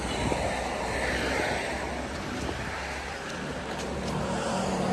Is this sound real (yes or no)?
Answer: yes